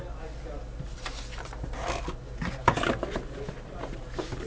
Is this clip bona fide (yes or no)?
yes